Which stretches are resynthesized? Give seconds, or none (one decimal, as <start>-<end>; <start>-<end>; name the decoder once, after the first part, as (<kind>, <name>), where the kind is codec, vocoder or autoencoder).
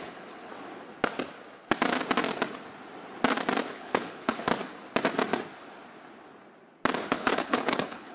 0.0-0.5 (codec, HILCodec); 3.7-4.5; 7.1-8.1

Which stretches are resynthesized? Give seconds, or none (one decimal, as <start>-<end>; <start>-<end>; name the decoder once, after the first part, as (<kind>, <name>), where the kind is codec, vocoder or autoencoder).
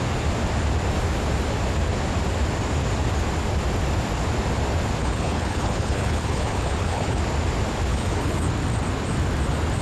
5.0-7.2 (codec, HILCodec); 7.9-8.5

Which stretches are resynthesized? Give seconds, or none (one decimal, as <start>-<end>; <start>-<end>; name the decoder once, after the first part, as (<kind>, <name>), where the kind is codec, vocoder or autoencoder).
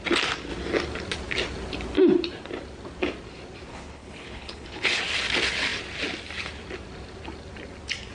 3.7-5.0 (codec, HILCodec)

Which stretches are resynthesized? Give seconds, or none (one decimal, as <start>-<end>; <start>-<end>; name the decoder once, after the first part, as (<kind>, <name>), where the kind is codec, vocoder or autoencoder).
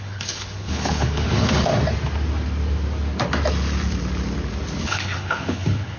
0.0-1.7 (codec, HILCodec); 4.8-6.0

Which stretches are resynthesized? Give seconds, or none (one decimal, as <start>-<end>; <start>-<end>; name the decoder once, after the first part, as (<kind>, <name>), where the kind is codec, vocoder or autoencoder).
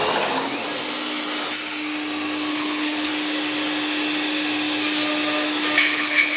2.5-3.1 (codec, HILCodec); 5.8-6.4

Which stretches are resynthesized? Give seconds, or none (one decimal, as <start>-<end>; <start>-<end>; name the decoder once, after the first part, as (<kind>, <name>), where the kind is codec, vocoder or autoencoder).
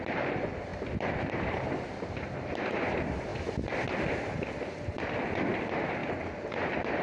none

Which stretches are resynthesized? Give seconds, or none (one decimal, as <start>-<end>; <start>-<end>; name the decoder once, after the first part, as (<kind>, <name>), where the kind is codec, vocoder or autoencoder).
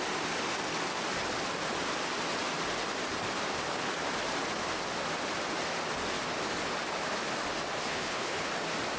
7.8-8.5 (codec, HILCodec)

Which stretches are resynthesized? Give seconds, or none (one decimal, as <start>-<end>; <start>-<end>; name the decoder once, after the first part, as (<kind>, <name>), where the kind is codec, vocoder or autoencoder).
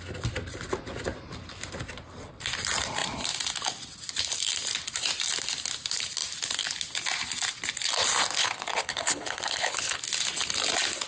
8.4-10.0 (codec, HILCodec)